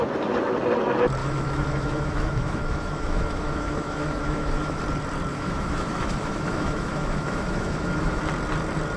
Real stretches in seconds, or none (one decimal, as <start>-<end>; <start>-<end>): 0.0-1.2; 4.8-5.3; 8.2-9.0